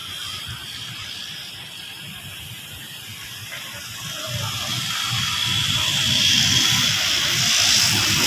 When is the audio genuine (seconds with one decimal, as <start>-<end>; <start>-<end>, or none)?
0.0-1.2